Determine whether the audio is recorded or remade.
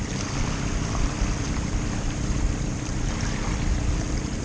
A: recorded